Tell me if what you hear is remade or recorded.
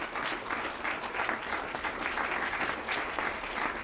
recorded